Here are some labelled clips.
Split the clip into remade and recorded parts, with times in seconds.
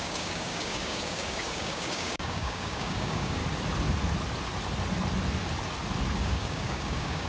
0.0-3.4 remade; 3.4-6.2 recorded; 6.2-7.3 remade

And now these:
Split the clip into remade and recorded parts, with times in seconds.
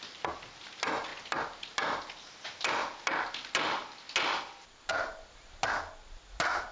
0.0-6.7 recorded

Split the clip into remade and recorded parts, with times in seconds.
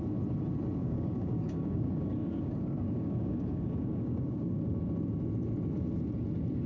0.0-0.8 recorded; 0.8-4.8 remade; 4.8-6.7 recorded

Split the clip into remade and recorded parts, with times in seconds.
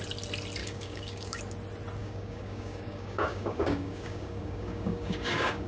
0.0-0.6 recorded; 0.6-1.4 remade; 1.4-2.0 recorded; 2.0-5.7 remade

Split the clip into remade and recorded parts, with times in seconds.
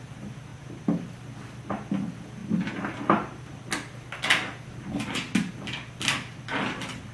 0.0-7.1 recorded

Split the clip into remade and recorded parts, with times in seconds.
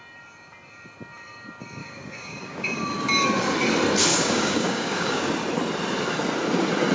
0.0-1.8 recorded; 1.8-2.8 remade; 2.8-4.1 recorded; 4.1-5.3 remade; 5.3-6.9 recorded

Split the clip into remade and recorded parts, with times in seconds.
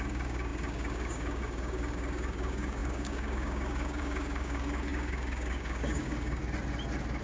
0.0-6.4 remade; 6.4-7.2 recorded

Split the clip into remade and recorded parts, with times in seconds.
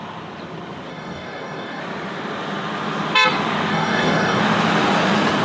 0.0-0.9 recorded; 0.9-1.8 remade; 1.8-3.7 recorded; 3.7-4.4 remade; 4.4-5.4 recorded